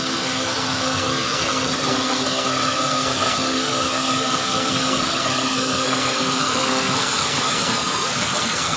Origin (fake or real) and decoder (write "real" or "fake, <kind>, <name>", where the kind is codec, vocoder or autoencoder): fake, codec, SNAC